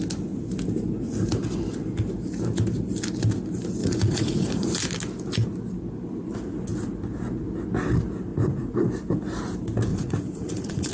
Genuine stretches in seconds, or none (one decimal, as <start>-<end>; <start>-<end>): 0.0-3.8; 4.8-8.3; 8.9-9.9